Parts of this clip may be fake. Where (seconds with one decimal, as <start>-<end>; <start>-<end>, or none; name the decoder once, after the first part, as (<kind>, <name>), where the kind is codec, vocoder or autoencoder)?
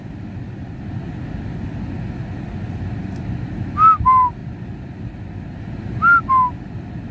4.4-5.6 (vocoder, BigVGAN v2)